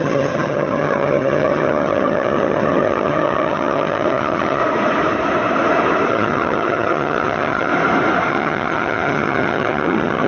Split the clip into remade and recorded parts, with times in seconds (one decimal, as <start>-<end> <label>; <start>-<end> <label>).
0.0-4.6 remade; 4.6-6.1 recorded; 6.1-7.7 remade; 7.7-8.3 recorded; 8.3-10.3 remade